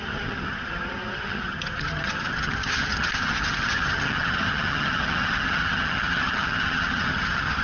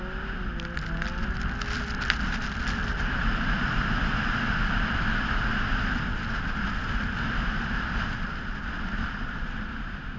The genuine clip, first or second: second